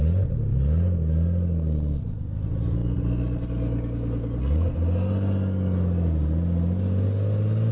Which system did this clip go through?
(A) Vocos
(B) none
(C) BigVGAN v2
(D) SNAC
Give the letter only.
B